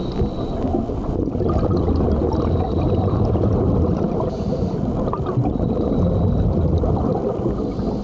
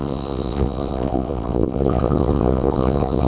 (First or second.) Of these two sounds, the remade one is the second